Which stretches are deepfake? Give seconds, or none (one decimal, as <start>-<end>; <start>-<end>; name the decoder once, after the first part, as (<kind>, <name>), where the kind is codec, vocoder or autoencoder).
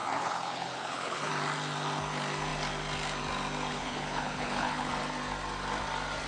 0.0-1.3 (codec, HILCodec); 3.7-4.9